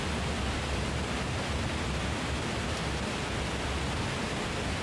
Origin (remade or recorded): recorded